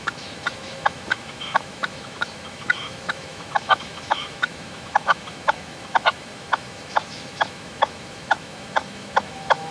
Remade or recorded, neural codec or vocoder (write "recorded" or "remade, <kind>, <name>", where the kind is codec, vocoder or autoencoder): remade, autoencoder, DAC-VAE